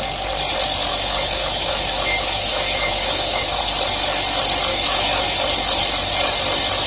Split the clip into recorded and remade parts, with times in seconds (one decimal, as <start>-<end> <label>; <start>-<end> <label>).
0.0-0.9 recorded; 0.9-3.6 remade; 3.6-4.7 recorded; 4.7-5.4 remade; 5.4-6.9 recorded